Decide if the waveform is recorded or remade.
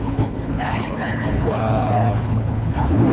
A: remade